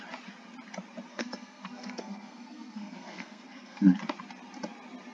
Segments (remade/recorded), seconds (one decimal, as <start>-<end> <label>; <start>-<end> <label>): 0.0-1.1 recorded; 1.1-4.0 remade; 4.0-5.1 recorded